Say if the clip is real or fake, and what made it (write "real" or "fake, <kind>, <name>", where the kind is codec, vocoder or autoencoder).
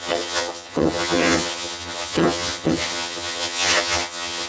fake, vocoder, HiFi-GAN